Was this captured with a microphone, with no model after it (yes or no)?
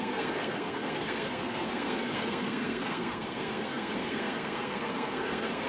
no